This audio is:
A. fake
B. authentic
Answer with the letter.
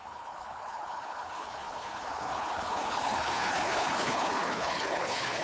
A